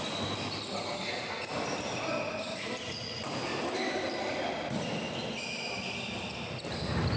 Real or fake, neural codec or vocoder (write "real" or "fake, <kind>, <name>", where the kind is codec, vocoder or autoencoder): real